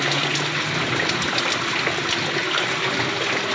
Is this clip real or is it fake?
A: real